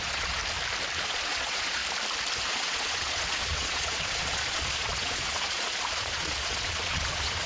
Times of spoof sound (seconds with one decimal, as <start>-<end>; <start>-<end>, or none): 0.0-0.4; 1.0-1.8; 2.4-7.5